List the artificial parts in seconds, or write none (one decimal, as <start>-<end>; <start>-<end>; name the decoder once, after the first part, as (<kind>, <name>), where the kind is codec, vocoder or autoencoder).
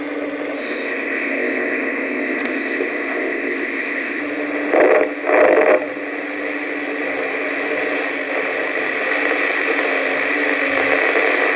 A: 0.6-4.2 (codec, ZipCodec)